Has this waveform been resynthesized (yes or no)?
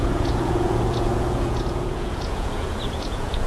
yes